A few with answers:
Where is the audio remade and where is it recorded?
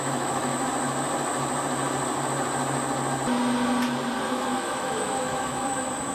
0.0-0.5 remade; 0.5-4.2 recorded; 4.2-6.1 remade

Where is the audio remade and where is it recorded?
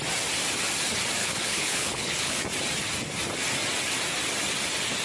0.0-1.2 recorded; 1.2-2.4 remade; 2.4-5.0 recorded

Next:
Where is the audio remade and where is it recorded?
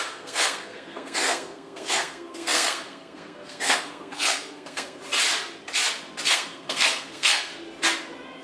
0.0-5.0 remade; 5.0-6.3 recorded; 6.3-7.5 remade; 7.5-8.4 recorded